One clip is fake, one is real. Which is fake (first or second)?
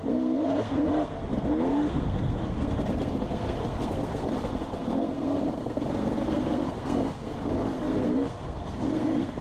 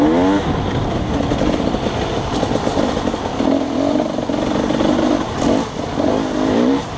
first